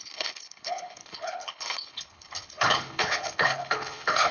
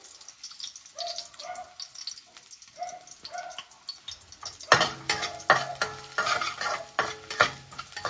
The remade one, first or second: first